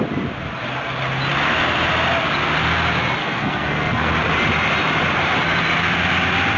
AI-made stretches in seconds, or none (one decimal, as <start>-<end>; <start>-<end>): 3.2-4.1